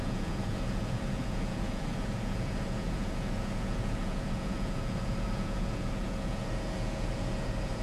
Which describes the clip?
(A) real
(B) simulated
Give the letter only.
B